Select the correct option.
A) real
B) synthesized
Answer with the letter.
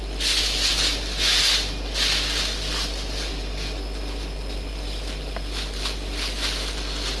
A